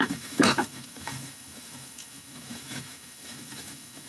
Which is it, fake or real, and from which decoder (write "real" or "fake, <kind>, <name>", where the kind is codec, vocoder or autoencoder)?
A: fake, autoencoder, DAC-VAE